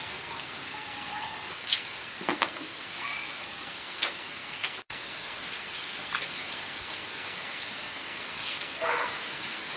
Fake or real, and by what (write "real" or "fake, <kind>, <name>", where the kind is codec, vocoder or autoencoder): fake, codec, SNAC